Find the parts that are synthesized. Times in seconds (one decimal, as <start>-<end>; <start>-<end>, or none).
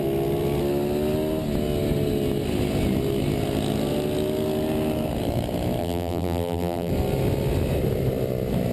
5.8-6.9